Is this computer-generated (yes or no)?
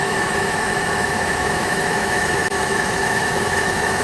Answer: yes